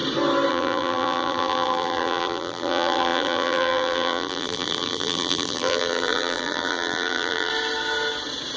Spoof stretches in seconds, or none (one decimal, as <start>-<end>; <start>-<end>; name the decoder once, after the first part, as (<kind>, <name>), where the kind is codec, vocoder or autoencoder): 0.5-7.5 (vocoder, BigVGAN v2)